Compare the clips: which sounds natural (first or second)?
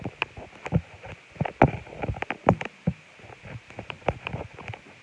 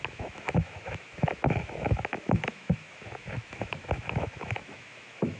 first